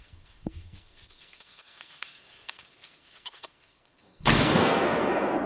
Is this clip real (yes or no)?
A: no